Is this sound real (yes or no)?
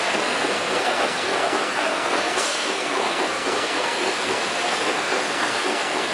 no